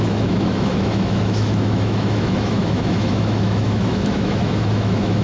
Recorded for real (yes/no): no